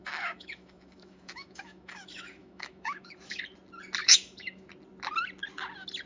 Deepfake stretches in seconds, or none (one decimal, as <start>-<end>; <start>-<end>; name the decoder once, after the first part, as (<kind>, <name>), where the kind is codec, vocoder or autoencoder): 0.0-3.4 (autoencoder, DAC-VAE); 4.0-4.7